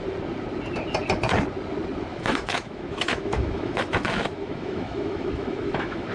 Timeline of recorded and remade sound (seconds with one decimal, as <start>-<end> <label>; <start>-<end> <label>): 0.0-2.1 recorded; 2.1-6.1 remade